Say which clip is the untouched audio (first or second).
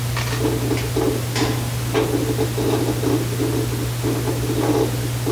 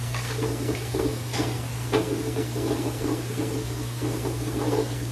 first